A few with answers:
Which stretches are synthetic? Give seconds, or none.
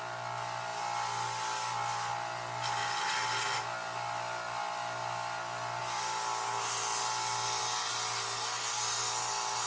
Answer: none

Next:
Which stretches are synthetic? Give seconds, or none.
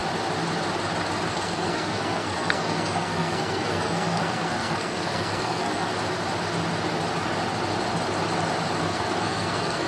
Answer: 1.3-5.9 (codec, SNAC); 8.8-9.9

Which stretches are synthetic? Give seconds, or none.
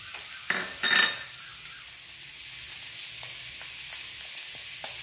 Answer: none